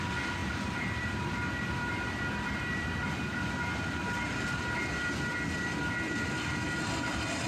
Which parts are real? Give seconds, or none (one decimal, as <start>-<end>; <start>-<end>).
0.0-0.4; 1.6-7.5